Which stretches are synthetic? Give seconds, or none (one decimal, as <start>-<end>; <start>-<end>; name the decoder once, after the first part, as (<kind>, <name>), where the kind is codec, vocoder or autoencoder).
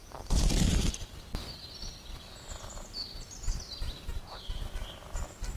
4.1-4.6 (vocoder, Vocos)